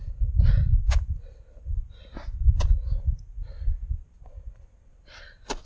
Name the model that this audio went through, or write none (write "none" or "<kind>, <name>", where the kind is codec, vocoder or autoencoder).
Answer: none